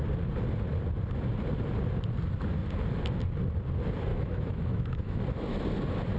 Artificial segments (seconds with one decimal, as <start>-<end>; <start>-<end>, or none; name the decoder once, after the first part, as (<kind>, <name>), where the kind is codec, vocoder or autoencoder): 4.1-5.2 (autoencoder, DAC-VAE)